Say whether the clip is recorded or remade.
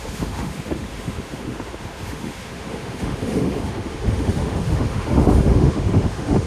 remade